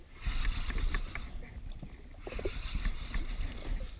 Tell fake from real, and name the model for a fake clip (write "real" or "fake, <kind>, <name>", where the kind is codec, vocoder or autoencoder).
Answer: real